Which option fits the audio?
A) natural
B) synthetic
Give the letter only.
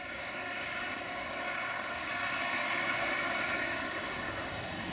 B